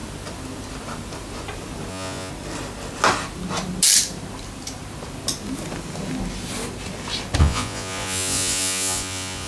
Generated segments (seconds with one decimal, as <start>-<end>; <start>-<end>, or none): 1.9-2.3; 7.4-9.5